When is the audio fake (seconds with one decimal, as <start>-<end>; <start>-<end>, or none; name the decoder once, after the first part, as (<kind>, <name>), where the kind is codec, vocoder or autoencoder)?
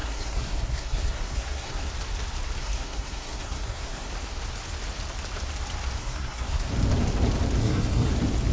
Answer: 0.0-1.9 (codec, SNAC); 2.6-4.1; 6.0-6.7; 7.6-8.1